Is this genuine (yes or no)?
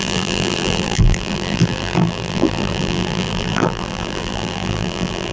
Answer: no